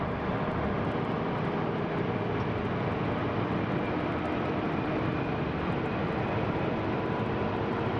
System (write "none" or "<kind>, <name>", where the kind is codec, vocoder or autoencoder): vocoder, BigVGAN v2